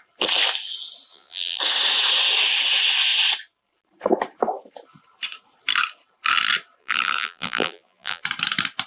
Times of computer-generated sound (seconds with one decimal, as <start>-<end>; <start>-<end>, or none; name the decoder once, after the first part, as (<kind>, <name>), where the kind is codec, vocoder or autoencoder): 1.1-1.6 (vocoder, BigVGAN v2); 6.8-8.2

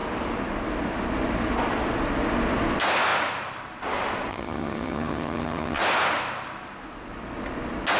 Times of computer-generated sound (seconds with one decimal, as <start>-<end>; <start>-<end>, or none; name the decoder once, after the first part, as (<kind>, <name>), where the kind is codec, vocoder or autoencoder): 4.3-5.8 (vocoder, HiFi-GAN)